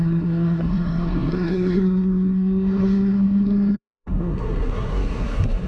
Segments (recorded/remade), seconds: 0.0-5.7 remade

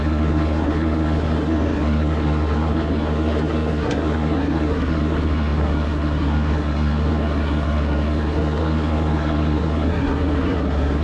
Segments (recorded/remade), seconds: 0.0-11.0 remade